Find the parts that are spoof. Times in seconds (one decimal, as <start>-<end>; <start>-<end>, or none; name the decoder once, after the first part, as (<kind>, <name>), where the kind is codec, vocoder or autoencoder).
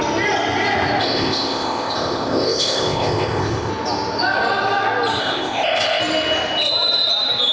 1.0-3.7 (codec, ZipCodec); 5.2-6.0